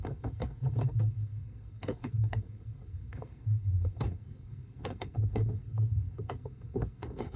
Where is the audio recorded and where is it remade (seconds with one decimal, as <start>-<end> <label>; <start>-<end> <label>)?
0.0-7.4 remade